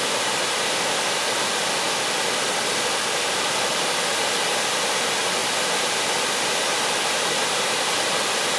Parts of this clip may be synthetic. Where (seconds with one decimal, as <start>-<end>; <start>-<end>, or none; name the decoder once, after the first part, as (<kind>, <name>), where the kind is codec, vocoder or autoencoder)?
none